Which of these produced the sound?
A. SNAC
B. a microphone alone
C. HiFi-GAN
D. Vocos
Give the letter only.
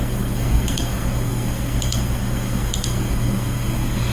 A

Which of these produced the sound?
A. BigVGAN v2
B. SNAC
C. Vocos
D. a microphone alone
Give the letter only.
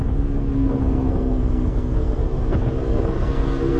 B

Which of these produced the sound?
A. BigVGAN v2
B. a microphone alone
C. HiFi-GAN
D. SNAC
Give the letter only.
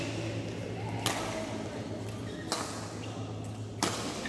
B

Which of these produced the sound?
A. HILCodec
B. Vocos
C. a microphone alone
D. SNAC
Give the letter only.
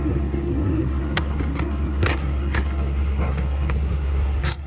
D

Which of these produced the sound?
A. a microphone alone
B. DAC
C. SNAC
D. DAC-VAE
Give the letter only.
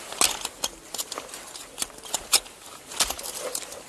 A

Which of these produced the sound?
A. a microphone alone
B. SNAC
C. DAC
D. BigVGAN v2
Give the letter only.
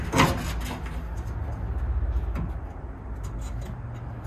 A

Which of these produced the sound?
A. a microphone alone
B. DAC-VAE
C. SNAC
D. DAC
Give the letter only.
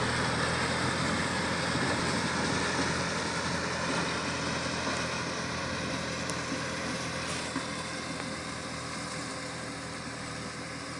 A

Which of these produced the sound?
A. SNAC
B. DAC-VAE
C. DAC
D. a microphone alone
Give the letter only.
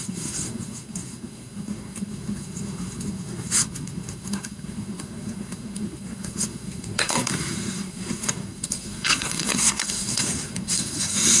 A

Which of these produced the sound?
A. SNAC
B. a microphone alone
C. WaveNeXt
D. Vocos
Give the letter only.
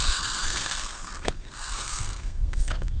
A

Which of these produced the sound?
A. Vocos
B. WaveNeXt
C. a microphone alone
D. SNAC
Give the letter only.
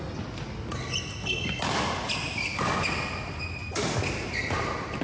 C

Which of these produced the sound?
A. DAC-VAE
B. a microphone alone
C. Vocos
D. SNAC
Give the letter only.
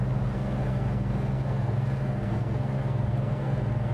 D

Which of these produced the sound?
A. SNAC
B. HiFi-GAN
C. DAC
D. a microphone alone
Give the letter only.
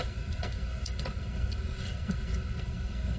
A